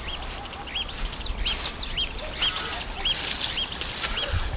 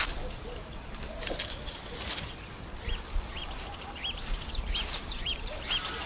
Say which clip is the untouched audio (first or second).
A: first